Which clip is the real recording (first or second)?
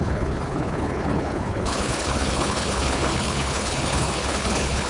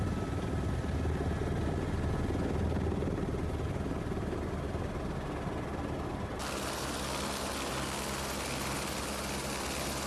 second